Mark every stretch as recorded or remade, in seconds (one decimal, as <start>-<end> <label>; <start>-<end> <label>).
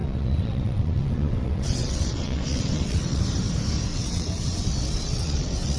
0.0-3.2 remade; 3.2-3.9 recorded; 3.9-5.8 remade